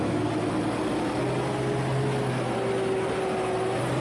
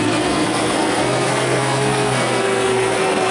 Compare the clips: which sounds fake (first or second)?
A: second